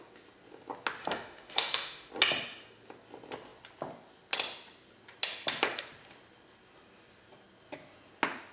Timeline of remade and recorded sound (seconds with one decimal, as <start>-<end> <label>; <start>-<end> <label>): 0.0-1.0 recorded; 1.0-2.1 remade; 2.1-8.5 recorded